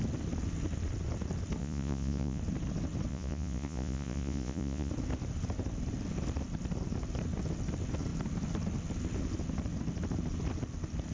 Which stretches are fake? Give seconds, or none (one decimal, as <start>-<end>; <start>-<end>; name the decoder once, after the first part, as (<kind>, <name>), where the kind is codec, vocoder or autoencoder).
1.6-2.4 (vocoder, Vocos); 3.1-4.9